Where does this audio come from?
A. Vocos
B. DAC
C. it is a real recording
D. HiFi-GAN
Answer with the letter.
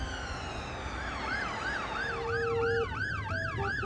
C